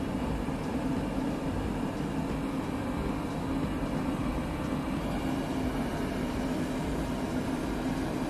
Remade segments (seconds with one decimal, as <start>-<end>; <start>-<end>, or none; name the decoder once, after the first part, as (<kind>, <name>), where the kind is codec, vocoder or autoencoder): none